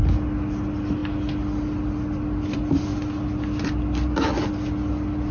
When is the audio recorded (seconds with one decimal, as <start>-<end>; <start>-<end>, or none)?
0.0-5.3